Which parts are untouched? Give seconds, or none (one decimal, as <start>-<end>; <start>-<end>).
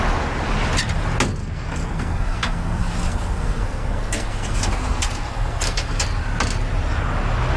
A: 0.0-1.4; 6.0-7.6